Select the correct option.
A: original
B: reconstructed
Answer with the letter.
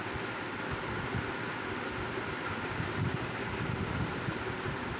B